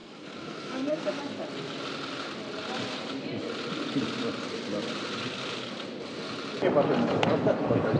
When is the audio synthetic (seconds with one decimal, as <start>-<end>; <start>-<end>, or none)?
0.0-1.2